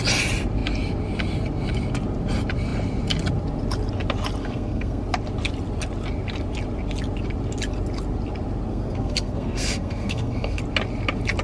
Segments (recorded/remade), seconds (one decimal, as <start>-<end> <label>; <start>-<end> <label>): 0.0-4.4 recorded; 4.4-5.0 remade; 5.0-8.7 recorded; 8.7-10.6 remade; 10.6-11.4 recorded